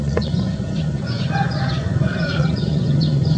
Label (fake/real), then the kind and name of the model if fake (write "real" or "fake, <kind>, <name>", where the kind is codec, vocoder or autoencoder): fake, vocoder, Vocos